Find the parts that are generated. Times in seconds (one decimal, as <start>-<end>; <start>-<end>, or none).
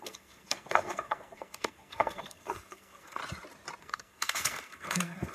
0.0-3.2; 3.8-5.3